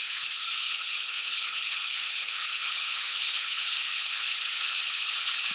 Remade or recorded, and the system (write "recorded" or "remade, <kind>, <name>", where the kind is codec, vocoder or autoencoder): remade, codec, HILCodec